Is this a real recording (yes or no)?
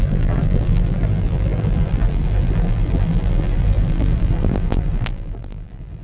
no